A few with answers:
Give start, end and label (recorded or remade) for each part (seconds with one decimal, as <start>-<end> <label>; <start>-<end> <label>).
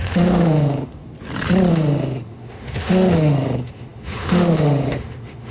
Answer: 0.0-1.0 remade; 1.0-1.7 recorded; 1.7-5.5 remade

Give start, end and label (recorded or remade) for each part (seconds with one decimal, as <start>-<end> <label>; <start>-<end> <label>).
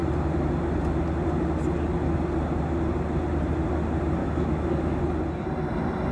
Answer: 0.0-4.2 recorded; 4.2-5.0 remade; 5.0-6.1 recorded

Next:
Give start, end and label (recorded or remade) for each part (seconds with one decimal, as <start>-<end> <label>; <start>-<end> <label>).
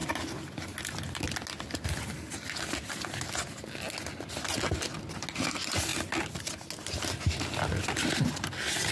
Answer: 0.0-8.9 recorded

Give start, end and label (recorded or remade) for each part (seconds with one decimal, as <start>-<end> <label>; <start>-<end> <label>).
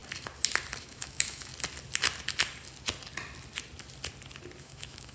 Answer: 0.0-0.8 recorded; 0.8-1.5 remade; 1.5-4.6 recorded; 4.6-5.1 remade